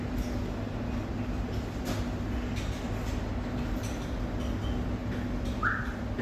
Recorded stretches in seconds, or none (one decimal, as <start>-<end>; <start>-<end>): 0.0-6.2